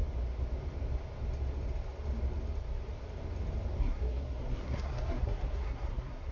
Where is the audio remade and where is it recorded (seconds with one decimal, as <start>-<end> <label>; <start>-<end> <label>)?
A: 0.0-3.8 recorded; 3.8-6.3 remade